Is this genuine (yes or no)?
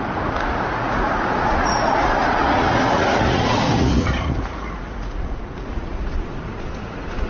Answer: no